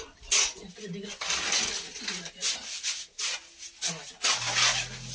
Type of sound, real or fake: real